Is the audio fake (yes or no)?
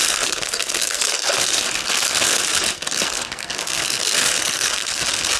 yes